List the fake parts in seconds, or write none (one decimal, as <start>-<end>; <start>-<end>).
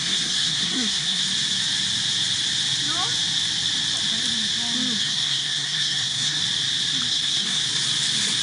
0.0-1.2; 5.0-6.4; 7.1-7.6